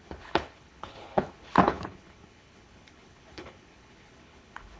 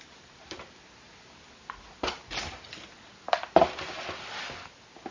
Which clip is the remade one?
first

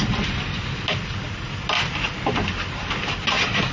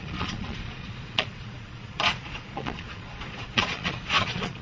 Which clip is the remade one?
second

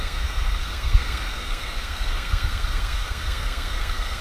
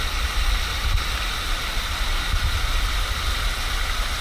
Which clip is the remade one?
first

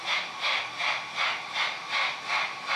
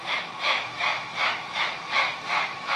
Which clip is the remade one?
second